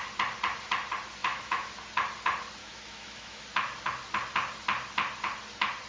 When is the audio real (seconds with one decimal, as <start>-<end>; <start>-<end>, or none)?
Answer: 0.0-1.2; 1.7-2.6; 3.4-5.9